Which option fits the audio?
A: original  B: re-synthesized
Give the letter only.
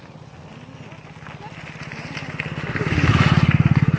A